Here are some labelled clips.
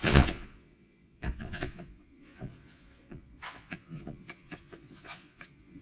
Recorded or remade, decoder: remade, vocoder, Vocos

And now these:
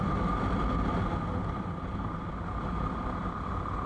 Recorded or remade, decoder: recorded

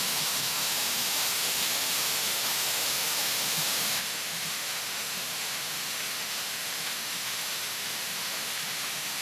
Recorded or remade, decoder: remade, autoencoder, DAC-VAE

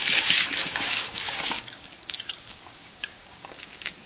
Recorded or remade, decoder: remade, codec, DAC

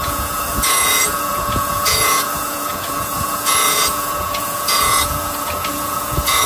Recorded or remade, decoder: remade, vocoder, Vocos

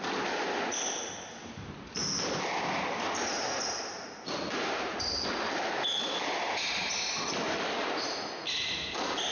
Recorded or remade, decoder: recorded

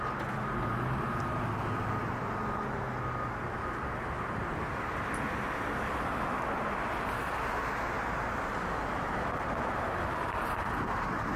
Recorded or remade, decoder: recorded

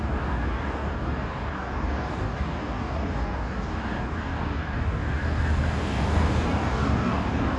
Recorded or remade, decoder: remade, codec, DAC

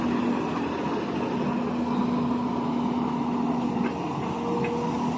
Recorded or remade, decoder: recorded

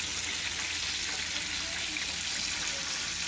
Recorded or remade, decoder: recorded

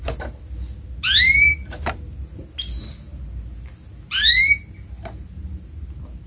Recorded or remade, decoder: recorded